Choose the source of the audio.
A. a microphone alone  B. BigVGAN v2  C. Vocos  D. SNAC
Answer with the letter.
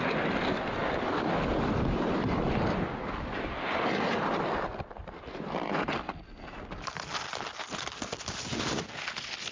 A